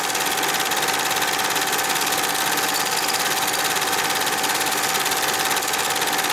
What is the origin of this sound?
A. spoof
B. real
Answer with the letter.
B